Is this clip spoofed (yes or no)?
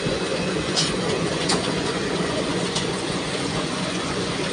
yes